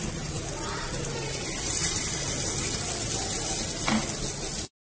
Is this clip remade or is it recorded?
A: recorded